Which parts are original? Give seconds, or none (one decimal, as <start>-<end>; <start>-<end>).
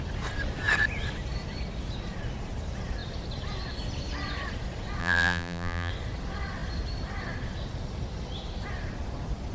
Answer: 0.0-5.0; 5.9-9.5